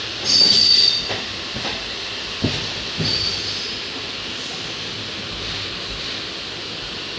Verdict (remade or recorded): recorded